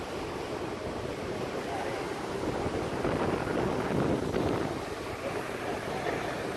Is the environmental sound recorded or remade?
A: recorded